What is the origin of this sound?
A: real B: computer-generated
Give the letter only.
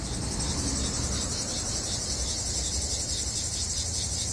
A